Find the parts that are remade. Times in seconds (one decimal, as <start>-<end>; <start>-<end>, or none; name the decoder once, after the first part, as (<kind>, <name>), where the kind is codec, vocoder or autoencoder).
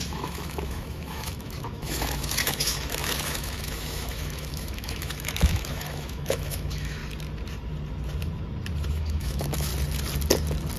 0.0-7.0 (autoencoder, DAC-VAE); 8.9-9.7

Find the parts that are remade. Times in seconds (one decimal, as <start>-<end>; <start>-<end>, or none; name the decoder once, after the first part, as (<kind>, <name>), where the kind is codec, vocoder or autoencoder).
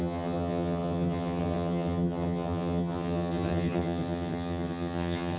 0.0-5.4 (vocoder, HiFi-GAN)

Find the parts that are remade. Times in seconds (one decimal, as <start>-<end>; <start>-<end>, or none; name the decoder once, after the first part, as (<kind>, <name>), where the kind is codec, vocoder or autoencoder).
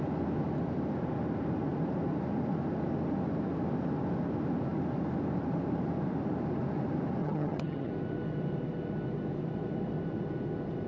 7.2-7.9 (vocoder, HiFi-GAN)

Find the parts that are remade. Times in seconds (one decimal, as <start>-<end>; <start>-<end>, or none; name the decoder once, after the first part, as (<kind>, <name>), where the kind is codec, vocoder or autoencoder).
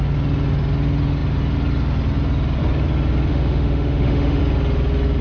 3.3-4.4 (autoencoder, DAC-VAE)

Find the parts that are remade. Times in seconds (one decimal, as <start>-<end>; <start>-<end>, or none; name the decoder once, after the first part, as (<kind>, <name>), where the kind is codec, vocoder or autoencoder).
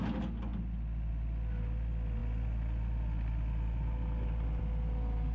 none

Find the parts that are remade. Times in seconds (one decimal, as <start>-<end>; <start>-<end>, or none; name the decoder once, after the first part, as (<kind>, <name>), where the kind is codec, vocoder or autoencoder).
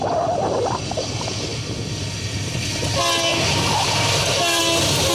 none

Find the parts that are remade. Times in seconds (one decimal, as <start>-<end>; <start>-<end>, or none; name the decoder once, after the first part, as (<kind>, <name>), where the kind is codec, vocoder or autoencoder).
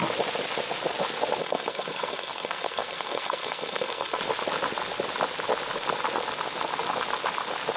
1.4-4.2 (codec, SNAC)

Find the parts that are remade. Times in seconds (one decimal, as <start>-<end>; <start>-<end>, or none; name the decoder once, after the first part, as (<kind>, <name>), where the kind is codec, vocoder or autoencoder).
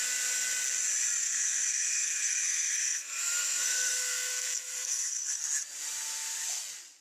1.2-5.4 (codec, SNAC)